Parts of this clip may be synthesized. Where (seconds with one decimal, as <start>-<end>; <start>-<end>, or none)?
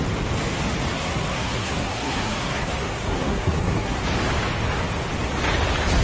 0.9-4.0